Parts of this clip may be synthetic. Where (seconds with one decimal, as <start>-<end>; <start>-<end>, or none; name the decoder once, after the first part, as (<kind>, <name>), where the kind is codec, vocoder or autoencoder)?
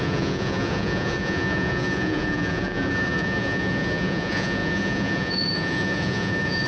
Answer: 0.0-6.7 (vocoder, Vocos)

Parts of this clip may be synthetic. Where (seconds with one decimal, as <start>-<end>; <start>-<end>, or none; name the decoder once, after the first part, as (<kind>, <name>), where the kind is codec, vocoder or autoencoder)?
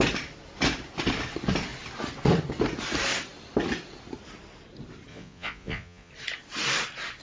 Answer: 5.1-6.1 (vocoder, Vocos)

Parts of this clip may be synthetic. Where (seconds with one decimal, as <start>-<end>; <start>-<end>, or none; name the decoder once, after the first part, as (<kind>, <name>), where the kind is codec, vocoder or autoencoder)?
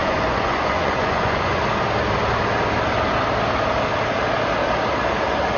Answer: 0.0-1.6 (vocoder, Vocos)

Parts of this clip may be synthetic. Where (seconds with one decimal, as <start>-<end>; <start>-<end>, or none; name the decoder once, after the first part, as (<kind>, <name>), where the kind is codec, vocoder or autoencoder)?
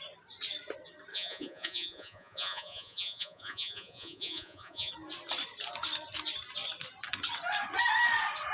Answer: 1.1-4.9 (vocoder, Vocos)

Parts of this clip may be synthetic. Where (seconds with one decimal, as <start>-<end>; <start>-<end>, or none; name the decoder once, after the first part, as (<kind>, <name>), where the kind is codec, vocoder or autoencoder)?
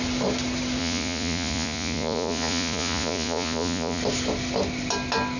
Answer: 0.8-4.0 (vocoder, Vocos)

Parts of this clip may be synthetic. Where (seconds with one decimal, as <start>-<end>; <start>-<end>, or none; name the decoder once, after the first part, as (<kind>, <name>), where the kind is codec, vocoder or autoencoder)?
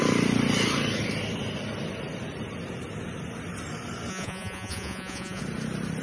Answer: 4.1-5.4 (vocoder, Vocos)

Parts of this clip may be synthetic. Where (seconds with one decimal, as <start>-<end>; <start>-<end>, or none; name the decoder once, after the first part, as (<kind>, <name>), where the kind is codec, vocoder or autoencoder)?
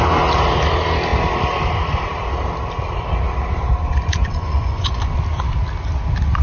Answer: 4.3-5.0 (vocoder, Vocos)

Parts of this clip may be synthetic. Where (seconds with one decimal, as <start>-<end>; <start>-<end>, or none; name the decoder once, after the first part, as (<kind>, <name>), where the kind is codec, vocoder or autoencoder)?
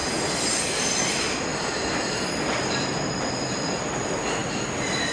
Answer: none